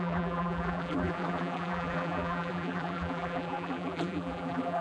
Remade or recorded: remade